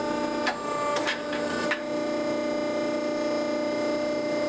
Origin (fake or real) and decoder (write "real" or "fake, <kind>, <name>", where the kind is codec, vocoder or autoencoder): real